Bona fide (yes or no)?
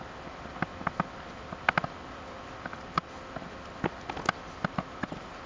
yes